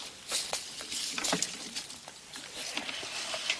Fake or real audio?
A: real